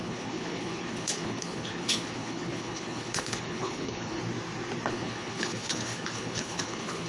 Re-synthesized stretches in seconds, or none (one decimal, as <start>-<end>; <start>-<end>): 0.0-4.2; 4.9-7.1